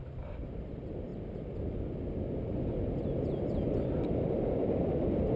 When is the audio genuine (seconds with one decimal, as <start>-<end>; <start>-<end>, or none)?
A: 0.0-5.4